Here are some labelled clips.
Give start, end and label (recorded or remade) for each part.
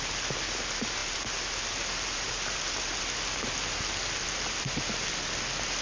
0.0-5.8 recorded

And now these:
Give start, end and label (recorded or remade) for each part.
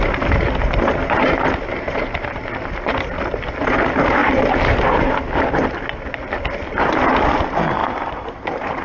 0.0-1.7 recorded; 1.7-2.3 remade; 2.3-4.2 recorded; 4.2-5.1 remade; 5.1-7.8 recorded; 7.8-8.8 remade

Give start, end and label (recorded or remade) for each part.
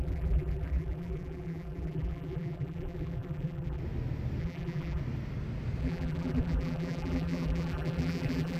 0.0-3.8 remade; 3.8-4.4 recorded; 4.4-5.0 remade; 5.0-5.8 recorded; 5.8-8.6 remade